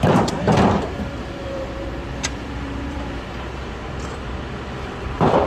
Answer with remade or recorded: remade